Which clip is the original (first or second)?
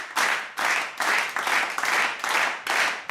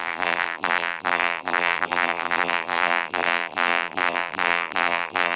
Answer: first